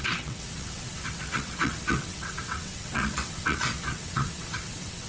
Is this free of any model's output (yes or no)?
no